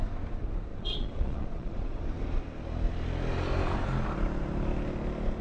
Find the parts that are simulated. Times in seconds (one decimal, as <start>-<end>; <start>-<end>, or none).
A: 0.7-2.0